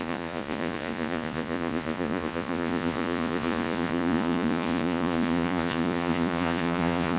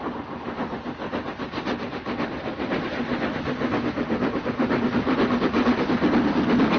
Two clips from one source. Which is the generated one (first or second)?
first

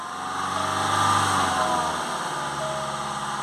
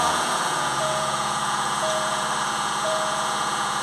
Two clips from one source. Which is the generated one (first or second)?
second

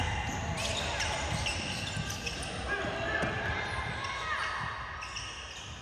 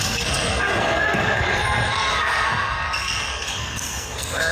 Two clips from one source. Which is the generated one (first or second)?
second